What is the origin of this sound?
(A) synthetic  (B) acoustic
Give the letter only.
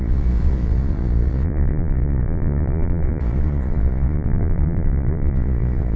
A